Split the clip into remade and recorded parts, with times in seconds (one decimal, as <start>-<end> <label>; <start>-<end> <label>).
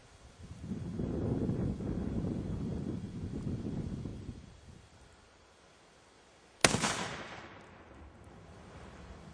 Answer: 0.0-9.3 recorded